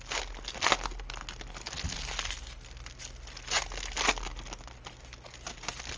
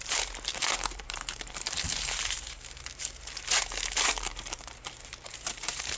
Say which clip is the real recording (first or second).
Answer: first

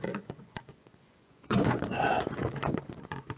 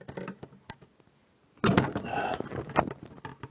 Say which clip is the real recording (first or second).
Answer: second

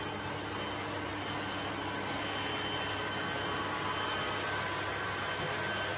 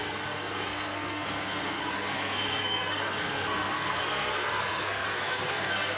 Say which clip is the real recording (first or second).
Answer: first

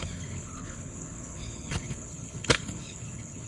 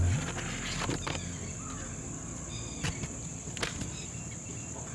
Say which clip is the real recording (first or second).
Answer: second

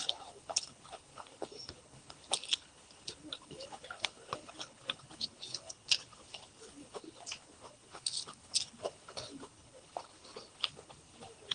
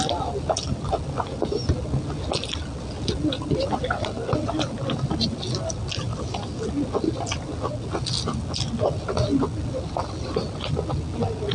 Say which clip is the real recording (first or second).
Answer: second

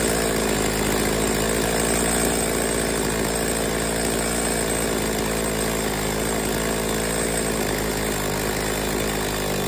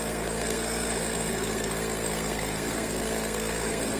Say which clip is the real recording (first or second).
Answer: first